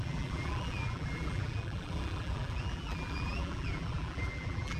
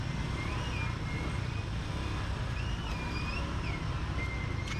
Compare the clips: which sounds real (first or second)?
second